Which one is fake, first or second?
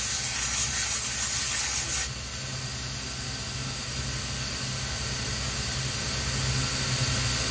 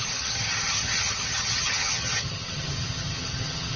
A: second